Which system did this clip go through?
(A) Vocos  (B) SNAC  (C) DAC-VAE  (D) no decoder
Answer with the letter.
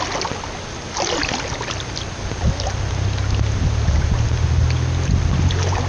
D